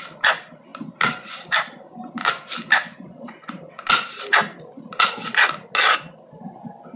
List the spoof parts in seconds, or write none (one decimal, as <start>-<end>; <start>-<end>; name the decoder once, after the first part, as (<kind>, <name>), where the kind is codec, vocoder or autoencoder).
none